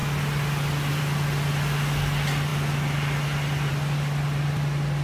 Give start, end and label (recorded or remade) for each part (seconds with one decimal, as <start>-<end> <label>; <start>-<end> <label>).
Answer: 0.0-5.0 recorded

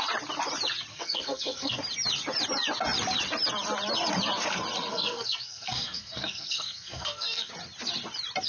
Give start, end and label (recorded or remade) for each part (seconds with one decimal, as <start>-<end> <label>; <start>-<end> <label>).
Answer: 0.0-0.9 recorded; 0.9-1.8 remade; 1.8-4.9 recorded; 4.9-7.5 remade; 7.5-8.5 recorded

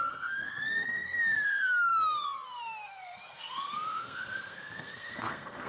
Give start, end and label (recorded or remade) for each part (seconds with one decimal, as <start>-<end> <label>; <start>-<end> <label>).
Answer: 0.0-5.7 remade

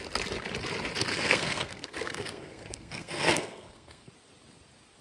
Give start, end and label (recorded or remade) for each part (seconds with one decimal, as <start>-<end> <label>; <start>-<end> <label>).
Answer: 0.0-1.1 recorded; 1.1-4.1 remade; 4.1-5.0 recorded

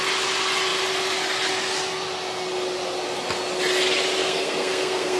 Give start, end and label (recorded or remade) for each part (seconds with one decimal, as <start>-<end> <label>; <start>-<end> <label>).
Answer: 0.0-4.2 recorded; 4.2-5.2 remade

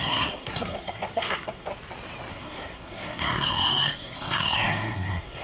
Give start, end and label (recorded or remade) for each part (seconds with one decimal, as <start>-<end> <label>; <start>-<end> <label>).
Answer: 0.0-1.7 remade; 1.7-2.3 recorded; 2.3-5.4 remade

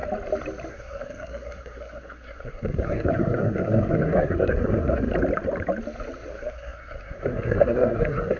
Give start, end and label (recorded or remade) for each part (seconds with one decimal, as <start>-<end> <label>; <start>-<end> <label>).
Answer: 0.0-0.7 recorded; 0.7-5.1 remade; 5.1-6.3 recorded; 6.3-8.4 remade